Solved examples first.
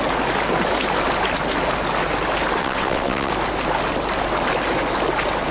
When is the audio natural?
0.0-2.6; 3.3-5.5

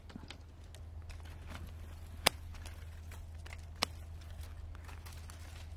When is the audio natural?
0.0-5.8